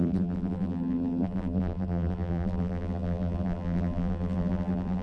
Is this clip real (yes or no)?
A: no